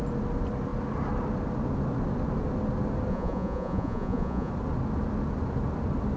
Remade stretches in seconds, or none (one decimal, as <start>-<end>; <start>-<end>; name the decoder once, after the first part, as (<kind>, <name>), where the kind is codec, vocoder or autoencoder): 3.1-4.5 (vocoder, Vocos)